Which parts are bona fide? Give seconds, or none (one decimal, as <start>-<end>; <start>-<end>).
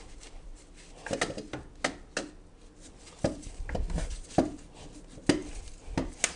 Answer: 0.0-6.4